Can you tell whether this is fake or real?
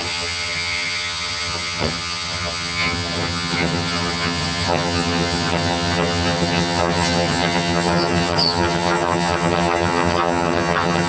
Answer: fake